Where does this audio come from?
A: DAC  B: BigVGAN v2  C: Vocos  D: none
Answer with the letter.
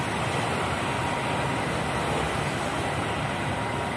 D